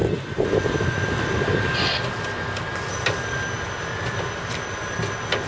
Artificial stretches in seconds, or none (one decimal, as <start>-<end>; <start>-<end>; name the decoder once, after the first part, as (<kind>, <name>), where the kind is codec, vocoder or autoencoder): none